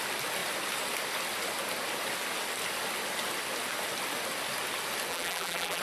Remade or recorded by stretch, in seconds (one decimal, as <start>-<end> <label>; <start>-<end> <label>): 0.0-5.1 recorded; 5.1-5.8 remade